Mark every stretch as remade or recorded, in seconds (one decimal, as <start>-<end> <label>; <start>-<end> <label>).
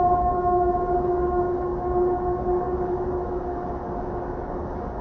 0.0-5.0 remade